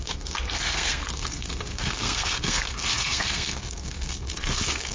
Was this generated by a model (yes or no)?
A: yes